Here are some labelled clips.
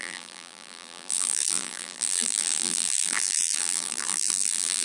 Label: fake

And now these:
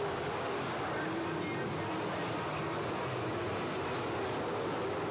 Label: real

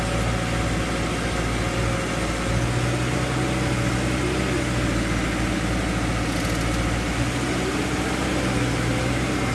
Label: real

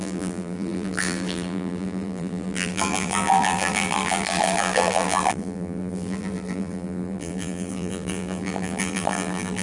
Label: fake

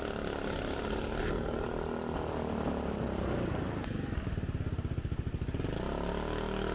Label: real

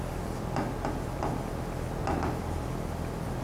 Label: real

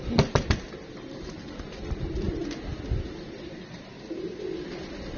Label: real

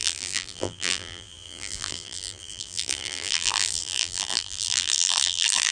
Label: fake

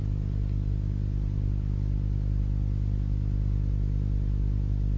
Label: real